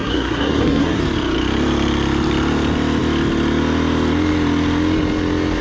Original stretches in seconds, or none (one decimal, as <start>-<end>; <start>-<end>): 1.0-5.6